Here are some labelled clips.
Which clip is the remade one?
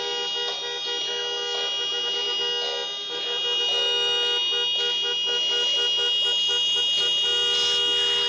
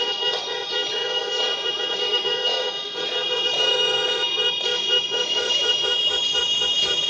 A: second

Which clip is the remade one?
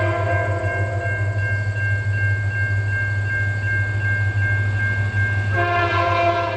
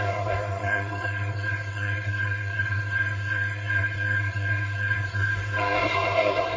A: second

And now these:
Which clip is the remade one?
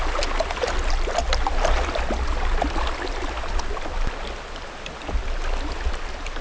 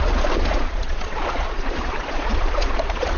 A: second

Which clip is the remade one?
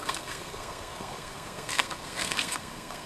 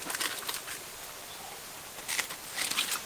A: first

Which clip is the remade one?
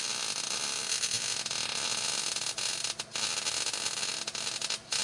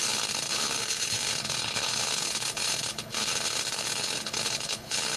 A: second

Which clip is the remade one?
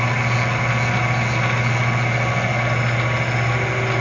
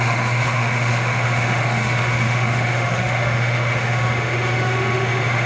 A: second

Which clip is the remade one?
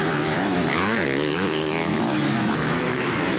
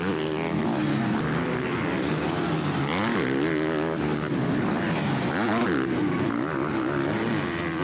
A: first